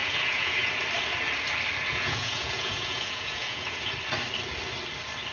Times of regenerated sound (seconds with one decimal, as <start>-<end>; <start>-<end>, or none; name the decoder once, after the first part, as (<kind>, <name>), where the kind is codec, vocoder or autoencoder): 0.0-0.7 (vocoder, Vocos); 1.9-3.9